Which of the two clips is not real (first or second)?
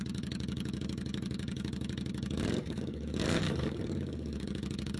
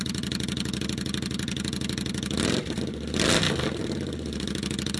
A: first